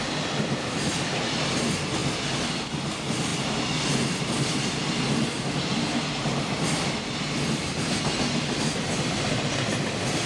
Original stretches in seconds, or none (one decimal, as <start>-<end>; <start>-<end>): 0.0-10.3